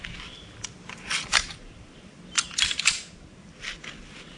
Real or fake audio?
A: real